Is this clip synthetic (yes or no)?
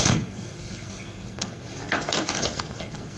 yes